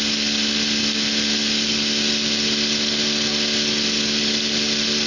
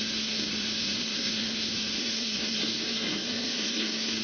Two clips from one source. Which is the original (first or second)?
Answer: first